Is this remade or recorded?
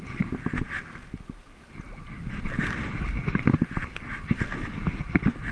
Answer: recorded